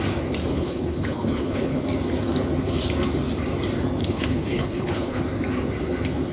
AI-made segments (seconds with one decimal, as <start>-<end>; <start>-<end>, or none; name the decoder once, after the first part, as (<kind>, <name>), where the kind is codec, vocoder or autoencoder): 0.5-1.8 (codec, HILCodec); 4.0-5.2